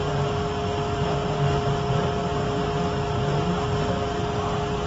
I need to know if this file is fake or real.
fake